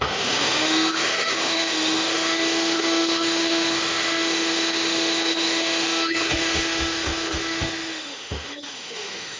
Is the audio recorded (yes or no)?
no